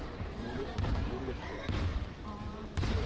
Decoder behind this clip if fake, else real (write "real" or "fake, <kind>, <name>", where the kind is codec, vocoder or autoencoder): fake, vocoder, BigVGAN v2